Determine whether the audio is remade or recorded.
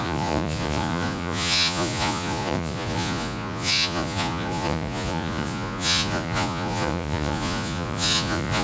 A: remade